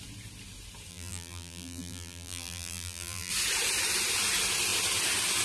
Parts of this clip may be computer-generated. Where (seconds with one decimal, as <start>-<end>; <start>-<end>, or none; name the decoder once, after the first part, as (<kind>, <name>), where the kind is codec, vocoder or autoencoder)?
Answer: 0.9-3.3 (vocoder, BigVGAN v2)